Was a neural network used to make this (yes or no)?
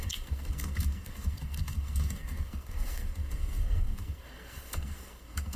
yes